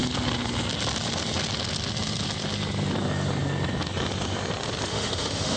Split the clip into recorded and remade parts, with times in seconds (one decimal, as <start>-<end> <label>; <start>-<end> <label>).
0.0-4.9 recorded; 4.9-5.6 remade